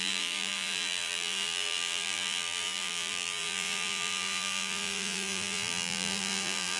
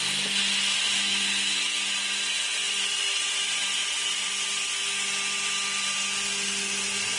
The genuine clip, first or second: second